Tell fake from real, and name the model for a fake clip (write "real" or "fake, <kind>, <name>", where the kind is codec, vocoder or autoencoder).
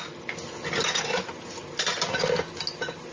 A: real